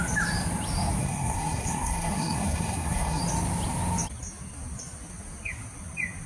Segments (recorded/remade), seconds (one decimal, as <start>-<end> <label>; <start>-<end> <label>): 0.0-1.0 recorded; 1.0-3.2 remade; 3.2-6.3 recorded